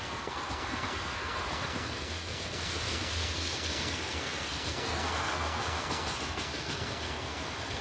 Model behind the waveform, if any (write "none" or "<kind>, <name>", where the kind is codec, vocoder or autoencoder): codec, SNAC